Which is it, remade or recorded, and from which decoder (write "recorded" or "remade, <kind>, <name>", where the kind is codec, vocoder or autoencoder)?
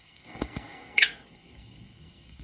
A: remade, codec, SNAC